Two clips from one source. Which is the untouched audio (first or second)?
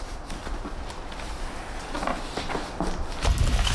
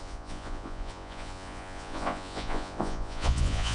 first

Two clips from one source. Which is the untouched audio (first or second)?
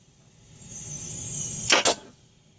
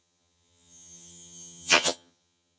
first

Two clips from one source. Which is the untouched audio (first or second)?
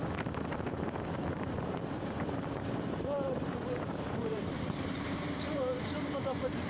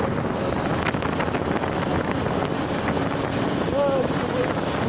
second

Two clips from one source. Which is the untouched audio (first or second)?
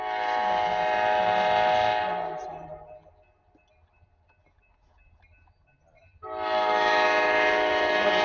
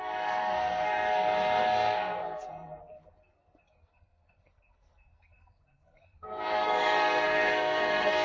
first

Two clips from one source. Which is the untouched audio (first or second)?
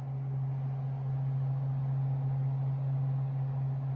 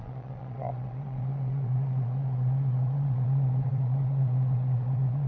first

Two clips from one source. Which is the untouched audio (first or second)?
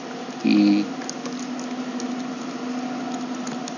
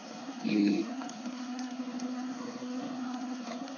first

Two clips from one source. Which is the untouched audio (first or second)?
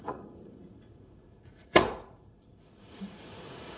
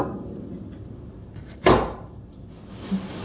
second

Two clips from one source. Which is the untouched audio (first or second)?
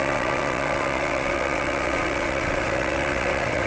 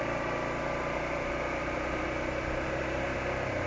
second